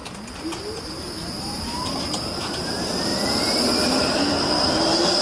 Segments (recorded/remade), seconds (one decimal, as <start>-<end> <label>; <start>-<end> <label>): 0.0-5.2 recorded